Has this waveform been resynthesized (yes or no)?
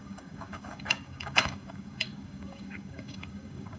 yes